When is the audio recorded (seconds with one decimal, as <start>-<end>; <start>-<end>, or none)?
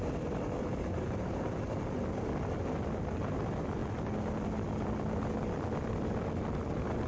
0.0-0.7; 1.7-7.1